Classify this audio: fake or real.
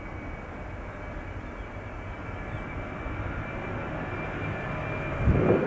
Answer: real